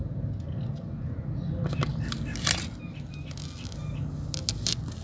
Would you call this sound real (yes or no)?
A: yes